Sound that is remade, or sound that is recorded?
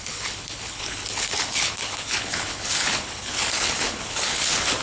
remade